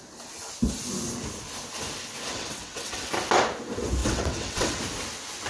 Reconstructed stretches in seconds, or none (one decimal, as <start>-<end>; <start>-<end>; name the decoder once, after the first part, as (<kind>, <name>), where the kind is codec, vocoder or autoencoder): 2.3-3.1 (vocoder, WaveNeXt); 4.0-4.8